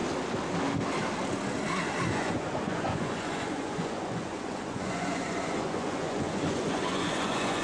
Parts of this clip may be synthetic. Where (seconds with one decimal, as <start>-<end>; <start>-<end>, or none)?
2.1-7.6